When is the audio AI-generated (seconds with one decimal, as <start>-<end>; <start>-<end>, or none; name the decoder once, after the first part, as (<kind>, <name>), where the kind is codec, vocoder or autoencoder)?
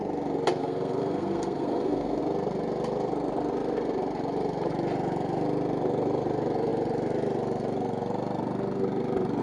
0.6-2.2 (codec, SNAC)